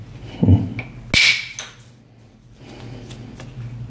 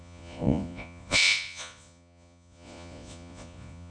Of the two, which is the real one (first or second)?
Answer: first